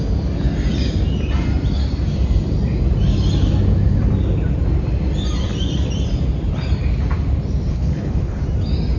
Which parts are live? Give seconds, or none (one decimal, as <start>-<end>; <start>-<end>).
0.0-7.7; 8.4-9.0